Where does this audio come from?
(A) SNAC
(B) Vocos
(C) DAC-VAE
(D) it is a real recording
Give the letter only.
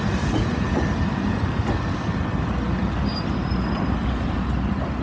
D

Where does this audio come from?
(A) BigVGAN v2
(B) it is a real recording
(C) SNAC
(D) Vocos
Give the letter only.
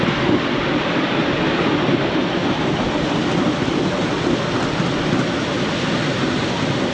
B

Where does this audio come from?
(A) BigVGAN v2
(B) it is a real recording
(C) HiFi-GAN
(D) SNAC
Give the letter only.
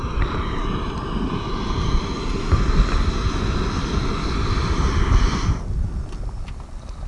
B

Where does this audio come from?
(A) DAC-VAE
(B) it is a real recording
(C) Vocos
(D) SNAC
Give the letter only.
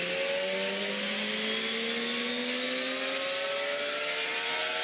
B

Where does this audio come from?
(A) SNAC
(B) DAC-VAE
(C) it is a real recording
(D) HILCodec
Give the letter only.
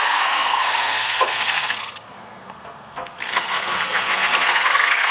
A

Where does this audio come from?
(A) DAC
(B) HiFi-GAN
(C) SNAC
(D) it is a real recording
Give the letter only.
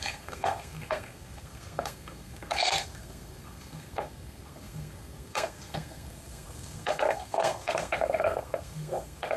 C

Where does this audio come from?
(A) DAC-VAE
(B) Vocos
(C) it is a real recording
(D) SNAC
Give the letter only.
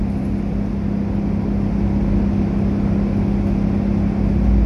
C